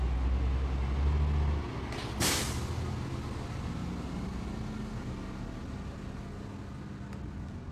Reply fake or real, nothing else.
real